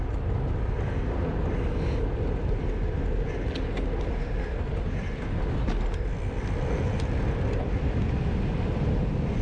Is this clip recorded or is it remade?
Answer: recorded